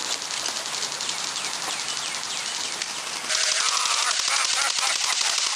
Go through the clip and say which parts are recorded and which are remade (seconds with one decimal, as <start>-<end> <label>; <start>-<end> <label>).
0.0-5.6 recorded